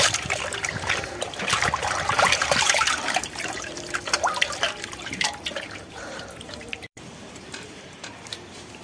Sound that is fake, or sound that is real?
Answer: fake